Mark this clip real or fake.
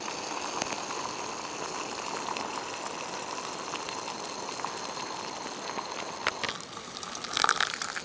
real